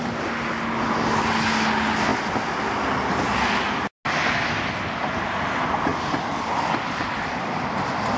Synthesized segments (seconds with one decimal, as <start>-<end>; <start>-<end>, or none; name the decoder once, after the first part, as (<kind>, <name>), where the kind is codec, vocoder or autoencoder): none